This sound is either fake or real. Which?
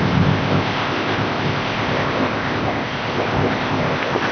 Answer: fake